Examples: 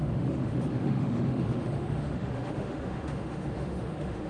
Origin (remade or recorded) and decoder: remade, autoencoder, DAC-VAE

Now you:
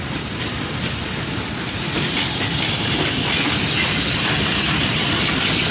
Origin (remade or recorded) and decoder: recorded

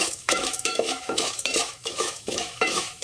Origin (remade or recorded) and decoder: remade, autoencoder, DAC-VAE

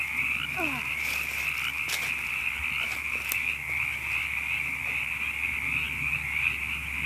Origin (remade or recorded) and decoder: recorded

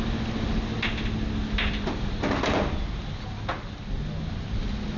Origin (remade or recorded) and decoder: recorded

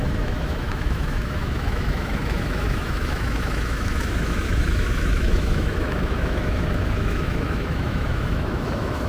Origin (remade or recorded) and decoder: remade, autoencoder, DAC-VAE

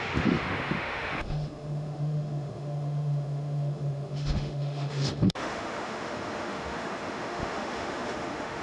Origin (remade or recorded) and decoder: remade, autoencoder, DAC-VAE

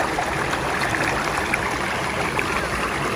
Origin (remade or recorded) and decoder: recorded